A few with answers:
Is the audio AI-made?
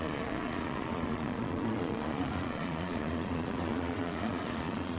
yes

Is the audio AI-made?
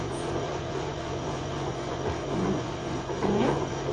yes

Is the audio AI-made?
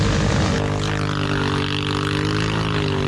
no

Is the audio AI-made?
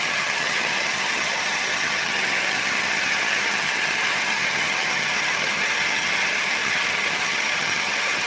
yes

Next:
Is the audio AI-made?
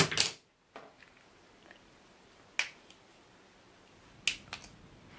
no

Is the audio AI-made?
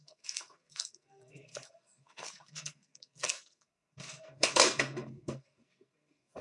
yes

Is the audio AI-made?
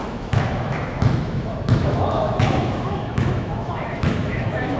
yes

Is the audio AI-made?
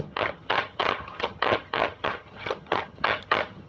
yes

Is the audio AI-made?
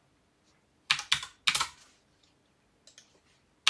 no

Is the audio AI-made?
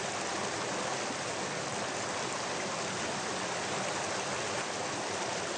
no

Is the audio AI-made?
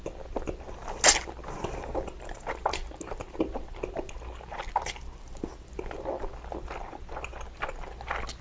no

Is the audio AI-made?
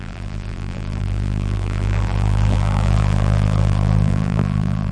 yes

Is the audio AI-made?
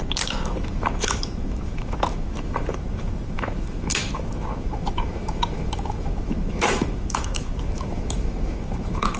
yes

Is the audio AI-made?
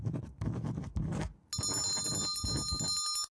no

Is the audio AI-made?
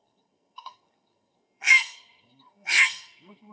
yes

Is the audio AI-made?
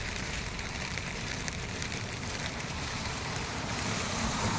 yes